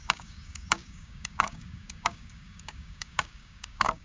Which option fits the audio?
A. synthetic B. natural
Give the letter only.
A